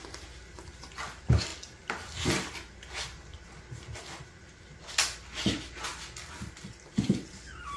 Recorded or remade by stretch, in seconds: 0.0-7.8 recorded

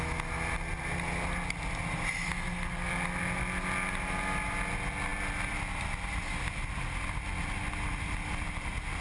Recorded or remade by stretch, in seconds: 0.0-9.0 recorded

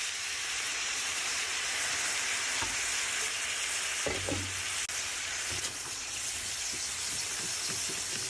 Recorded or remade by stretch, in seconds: 0.0-0.7 recorded; 0.7-1.9 remade; 1.9-5.1 recorded; 5.1-6.5 remade; 6.5-8.3 recorded

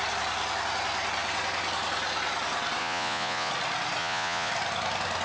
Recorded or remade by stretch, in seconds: 0.0-2.8 recorded; 2.8-3.5 remade; 3.5-4.0 recorded; 4.0-4.5 remade; 4.5-5.2 recorded

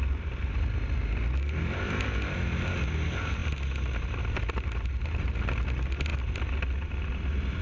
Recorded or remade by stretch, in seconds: 0.0-7.6 recorded

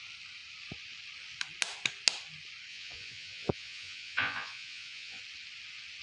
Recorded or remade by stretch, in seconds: 0.0-2.7 recorded; 2.7-5.2 remade; 5.2-6.0 recorded

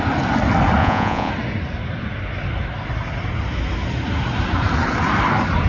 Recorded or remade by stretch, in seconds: 0.0-0.8 recorded; 0.8-1.3 remade; 1.3-5.7 recorded